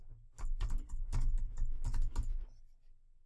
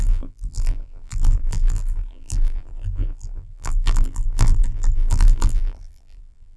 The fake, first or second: second